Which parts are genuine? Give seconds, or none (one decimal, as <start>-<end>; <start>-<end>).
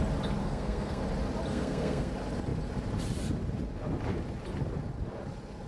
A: 0.0-0.4; 1.0-1.5; 2.1-5.7